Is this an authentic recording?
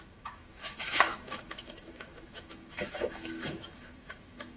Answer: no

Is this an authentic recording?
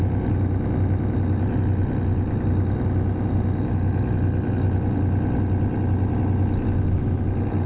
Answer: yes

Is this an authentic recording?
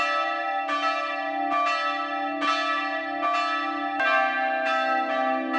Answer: yes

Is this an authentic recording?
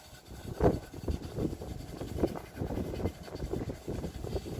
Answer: yes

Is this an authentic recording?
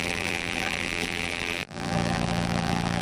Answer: no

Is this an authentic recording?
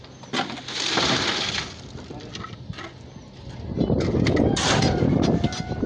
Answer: yes